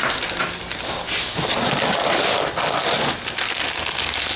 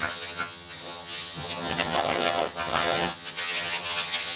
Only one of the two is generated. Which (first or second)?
second